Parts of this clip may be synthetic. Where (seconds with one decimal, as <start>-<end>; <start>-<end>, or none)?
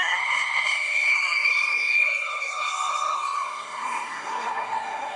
0.0-5.2